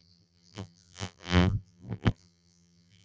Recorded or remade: remade